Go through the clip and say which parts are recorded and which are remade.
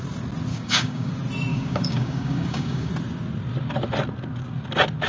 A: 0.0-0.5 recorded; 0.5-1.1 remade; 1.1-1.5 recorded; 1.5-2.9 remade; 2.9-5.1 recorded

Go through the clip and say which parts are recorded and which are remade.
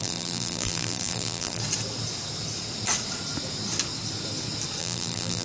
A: 0.0-1.6 remade; 1.6-4.8 recorded; 4.8-5.4 remade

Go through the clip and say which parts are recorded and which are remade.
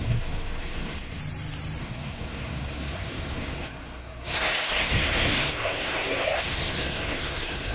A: 0.0-1.2 remade; 1.2-1.8 recorded; 1.8-7.7 remade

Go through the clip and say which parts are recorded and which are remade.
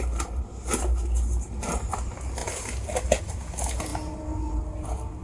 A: 0.0-5.2 recorded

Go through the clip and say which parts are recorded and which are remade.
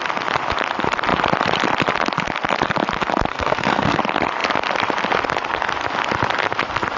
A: 0.0-3.3 recorded; 3.3-4.0 remade; 4.0-7.0 recorded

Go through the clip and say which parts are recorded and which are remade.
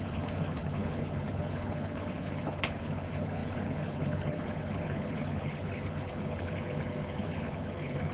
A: 0.0-8.1 remade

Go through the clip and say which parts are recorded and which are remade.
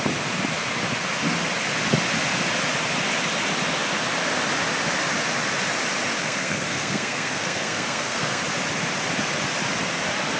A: 0.0-6.2 recorded; 6.2-8.4 remade; 8.4-10.4 recorded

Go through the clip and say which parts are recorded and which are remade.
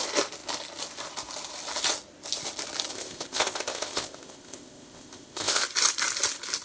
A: 0.0-2.9 recorded; 2.9-5.6 remade; 5.6-6.6 recorded